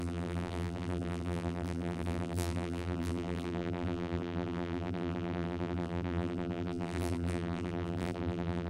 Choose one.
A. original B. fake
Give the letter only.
B